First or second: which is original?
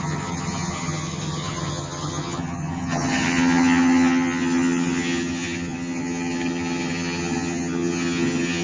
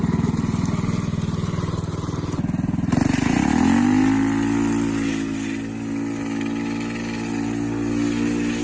second